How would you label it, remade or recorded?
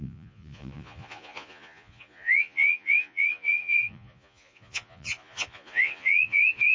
remade